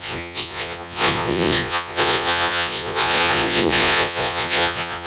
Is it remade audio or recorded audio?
remade